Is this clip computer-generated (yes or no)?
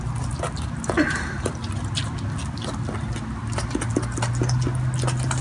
no